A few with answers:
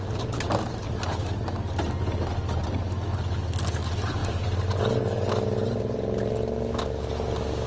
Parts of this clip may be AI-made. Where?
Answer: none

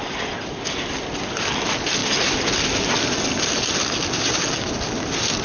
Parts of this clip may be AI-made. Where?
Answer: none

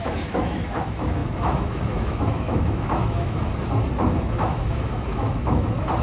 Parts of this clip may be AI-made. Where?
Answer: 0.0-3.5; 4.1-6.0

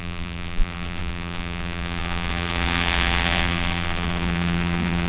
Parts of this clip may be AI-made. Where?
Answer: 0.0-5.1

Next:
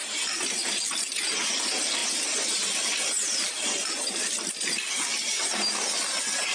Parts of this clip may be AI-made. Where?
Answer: 0.0-0.8; 2.0-4.5

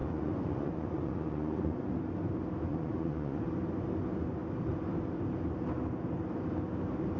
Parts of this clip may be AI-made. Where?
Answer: 0.0-1.9; 2.7-3.4